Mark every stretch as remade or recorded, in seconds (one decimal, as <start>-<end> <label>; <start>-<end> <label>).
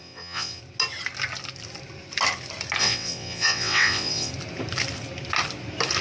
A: 0.0-0.6 remade; 0.6-2.8 recorded; 2.8-4.3 remade; 4.3-6.0 recorded